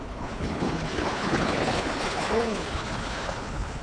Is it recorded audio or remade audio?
remade